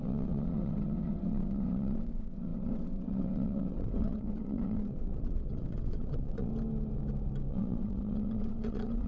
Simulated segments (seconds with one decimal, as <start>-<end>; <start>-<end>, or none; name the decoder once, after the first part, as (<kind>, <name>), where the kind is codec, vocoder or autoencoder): 0.0-6.5 (vocoder, WaveNeXt); 7.5-9.1